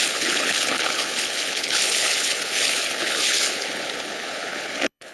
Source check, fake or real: fake